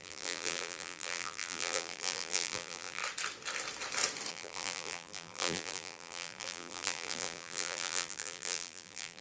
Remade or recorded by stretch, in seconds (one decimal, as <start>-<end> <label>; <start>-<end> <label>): 0.0-3.0 remade; 3.0-4.3 recorded; 4.3-9.2 remade